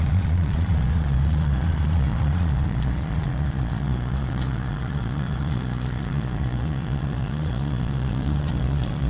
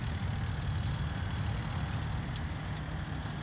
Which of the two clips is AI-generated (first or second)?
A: first